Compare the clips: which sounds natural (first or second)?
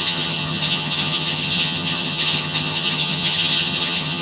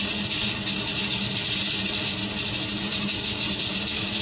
second